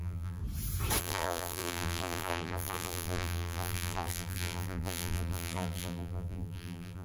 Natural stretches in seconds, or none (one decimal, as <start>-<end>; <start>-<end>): 0.4-1.0